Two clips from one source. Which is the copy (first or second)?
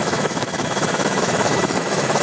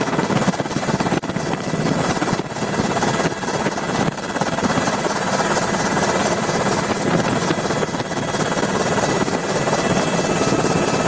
first